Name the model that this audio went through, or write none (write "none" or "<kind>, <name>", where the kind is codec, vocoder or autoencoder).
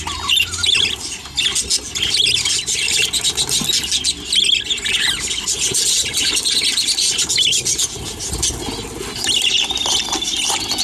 none